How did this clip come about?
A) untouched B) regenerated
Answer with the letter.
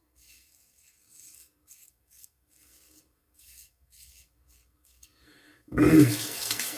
B